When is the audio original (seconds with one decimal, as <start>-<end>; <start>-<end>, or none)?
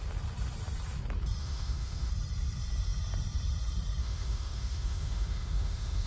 0.0-1.4; 2.1-4.0